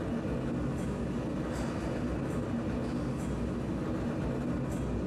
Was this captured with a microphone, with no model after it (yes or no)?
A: yes